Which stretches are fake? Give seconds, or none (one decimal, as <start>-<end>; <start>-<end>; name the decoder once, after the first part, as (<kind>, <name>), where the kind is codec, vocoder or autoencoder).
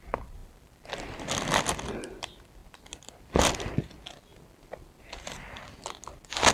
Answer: 0.4-1.1 (vocoder, BigVGAN v2); 2.6-3.7; 4.3-5.2